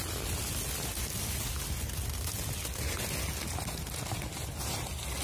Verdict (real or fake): real